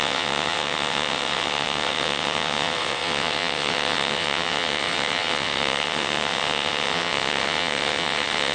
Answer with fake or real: fake